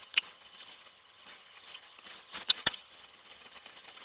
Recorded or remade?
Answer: remade